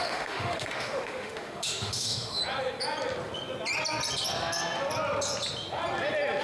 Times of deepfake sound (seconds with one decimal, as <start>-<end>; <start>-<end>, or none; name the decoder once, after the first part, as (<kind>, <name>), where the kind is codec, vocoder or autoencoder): 0.0-2.4 (autoencoder, DAC-VAE)